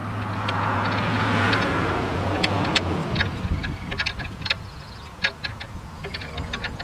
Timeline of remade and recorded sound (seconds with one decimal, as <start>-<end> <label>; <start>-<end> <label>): 0.0-0.5 recorded; 0.5-3.0 remade; 3.0-4.2 recorded; 4.2-6.8 remade

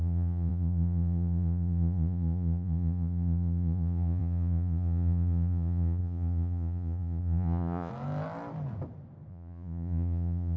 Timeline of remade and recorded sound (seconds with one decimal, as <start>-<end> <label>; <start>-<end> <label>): 0.0-7.9 remade; 7.9-9.3 recorded; 9.3-10.6 remade

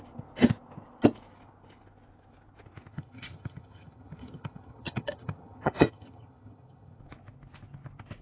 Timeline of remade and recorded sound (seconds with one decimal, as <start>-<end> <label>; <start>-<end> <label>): 0.0-2.9 recorded; 2.9-7.0 remade; 7.0-8.2 recorded

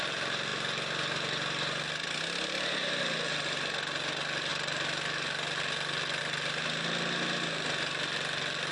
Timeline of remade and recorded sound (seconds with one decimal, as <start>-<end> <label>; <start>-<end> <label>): 0.0-8.7 recorded

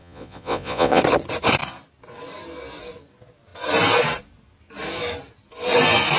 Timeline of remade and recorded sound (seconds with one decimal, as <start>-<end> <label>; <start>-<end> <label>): 0.0-1.0 remade; 1.0-6.2 recorded